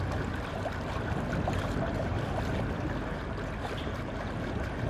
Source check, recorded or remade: recorded